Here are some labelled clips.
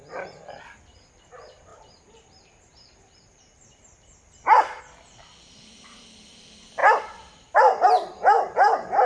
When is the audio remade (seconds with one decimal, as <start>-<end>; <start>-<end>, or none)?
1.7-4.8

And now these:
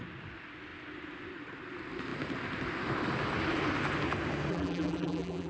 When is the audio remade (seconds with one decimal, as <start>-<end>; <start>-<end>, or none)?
4.5-5.5

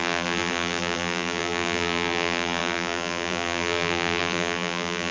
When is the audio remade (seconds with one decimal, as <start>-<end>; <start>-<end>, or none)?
0.0-5.1

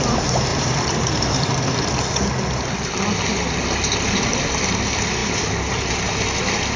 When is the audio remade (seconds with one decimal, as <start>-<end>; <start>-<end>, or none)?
0.5-1.9

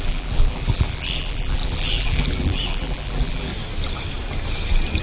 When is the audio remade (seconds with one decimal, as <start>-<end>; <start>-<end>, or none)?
0.0-3.5

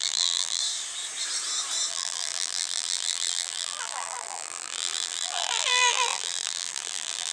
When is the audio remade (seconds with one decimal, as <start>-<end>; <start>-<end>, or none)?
0.0-0.6; 1.9-7.3